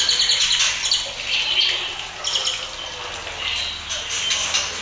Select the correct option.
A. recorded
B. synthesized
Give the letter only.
A